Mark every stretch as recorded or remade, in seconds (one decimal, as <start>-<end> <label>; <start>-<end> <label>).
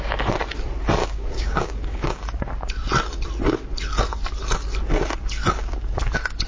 0.0-1.0 recorded; 1.0-2.2 remade; 2.2-6.5 recorded